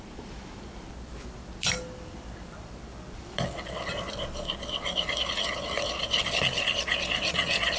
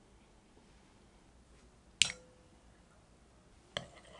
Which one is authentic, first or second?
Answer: second